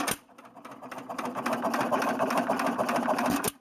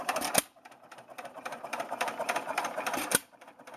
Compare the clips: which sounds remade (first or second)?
second